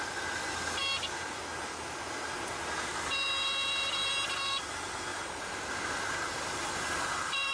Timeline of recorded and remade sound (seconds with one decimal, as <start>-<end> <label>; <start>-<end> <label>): 0.0-5.1 recorded; 5.1-5.9 remade; 5.9-7.5 recorded